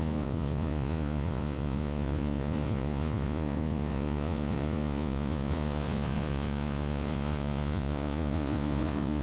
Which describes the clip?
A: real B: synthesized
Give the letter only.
B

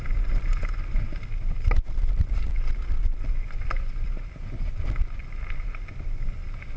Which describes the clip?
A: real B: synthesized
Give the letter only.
A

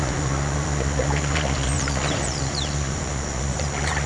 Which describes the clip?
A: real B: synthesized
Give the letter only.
B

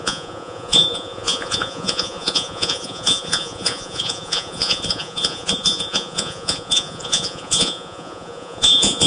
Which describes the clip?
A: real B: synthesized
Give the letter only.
B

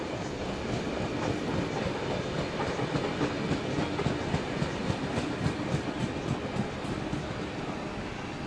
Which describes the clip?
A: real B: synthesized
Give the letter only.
A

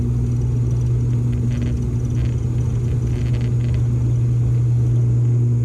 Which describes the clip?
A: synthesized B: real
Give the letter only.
B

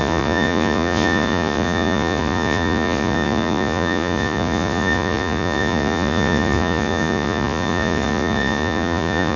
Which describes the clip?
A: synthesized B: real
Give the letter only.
A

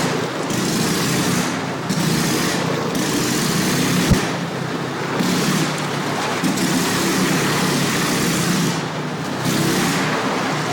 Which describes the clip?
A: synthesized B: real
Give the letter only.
B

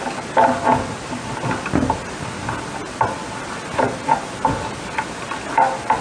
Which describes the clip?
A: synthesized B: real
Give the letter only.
B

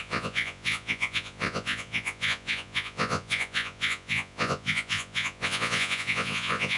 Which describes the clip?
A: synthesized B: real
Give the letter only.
A